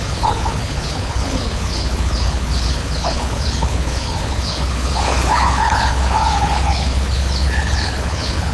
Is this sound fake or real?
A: fake